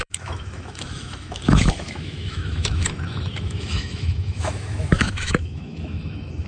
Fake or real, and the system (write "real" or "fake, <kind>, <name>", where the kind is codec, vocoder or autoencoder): fake, autoencoder, DAC-VAE